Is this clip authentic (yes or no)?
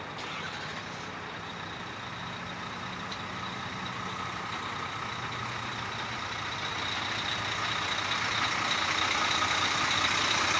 yes